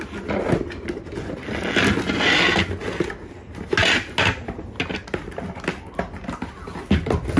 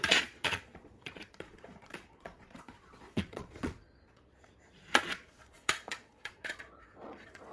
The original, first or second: first